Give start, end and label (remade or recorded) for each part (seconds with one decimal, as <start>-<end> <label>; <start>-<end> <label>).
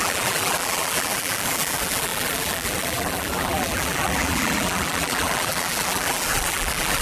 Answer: 0.0-7.0 remade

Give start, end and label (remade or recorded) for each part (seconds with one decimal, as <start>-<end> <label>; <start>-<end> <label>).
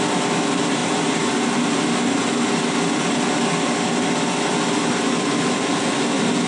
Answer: 0.0-0.8 recorded; 0.8-1.4 remade; 1.4-6.5 recorded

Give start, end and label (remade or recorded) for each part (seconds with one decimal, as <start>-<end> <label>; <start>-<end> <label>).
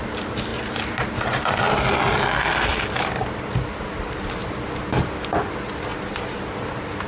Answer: 0.0-2.7 recorded; 2.7-3.8 remade; 3.8-4.4 recorded; 4.4-5.0 remade; 5.0-7.1 recorded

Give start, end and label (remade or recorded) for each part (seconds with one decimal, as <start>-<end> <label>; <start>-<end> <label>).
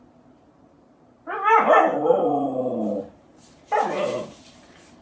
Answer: 0.0-1.9 recorded; 1.9-5.0 remade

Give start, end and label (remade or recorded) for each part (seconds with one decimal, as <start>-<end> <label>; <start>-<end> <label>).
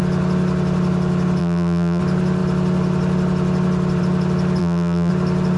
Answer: 0.0-1.4 recorded; 1.4-2.0 remade; 2.0-4.6 recorded; 4.6-5.1 remade; 5.1-5.6 recorded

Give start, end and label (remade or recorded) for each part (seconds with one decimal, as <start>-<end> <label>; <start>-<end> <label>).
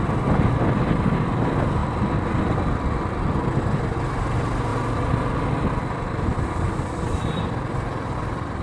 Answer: 0.0-1.8 recorded; 1.8-3.6 remade; 3.6-4.7 recorded; 4.7-7.4 remade; 7.4-8.6 recorded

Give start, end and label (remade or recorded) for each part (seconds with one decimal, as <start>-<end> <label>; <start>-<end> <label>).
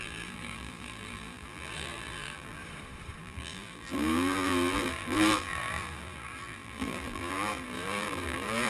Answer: 0.0-2.6 remade; 2.6-3.2 recorded; 3.2-8.7 remade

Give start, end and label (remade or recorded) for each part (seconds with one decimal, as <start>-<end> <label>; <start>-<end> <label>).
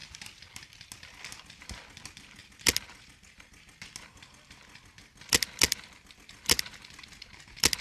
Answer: 0.0-0.8 remade; 0.8-7.8 recorded